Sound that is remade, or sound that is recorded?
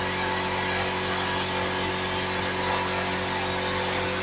recorded